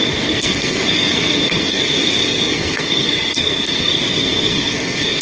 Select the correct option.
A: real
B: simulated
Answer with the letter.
B